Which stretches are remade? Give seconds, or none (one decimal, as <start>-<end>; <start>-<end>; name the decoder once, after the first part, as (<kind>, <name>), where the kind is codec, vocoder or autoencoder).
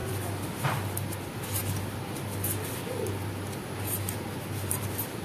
none